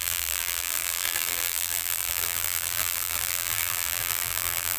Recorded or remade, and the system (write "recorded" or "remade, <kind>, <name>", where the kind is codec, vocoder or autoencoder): remade, vocoder, BigVGAN v2